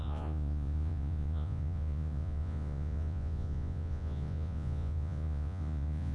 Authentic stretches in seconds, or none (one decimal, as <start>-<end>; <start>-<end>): none